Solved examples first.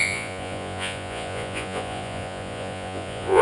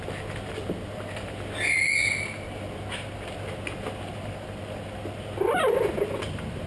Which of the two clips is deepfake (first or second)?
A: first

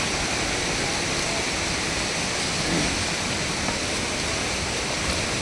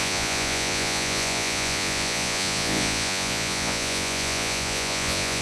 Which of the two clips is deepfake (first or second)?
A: second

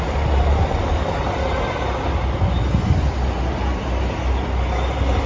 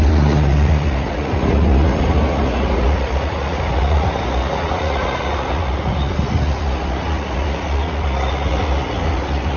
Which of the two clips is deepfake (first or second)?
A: second